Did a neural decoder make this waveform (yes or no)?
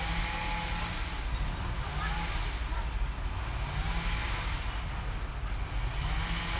no